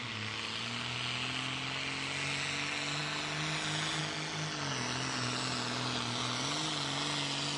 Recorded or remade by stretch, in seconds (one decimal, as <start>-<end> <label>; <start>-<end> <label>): 0.0-7.6 recorded